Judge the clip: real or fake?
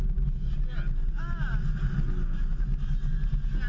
real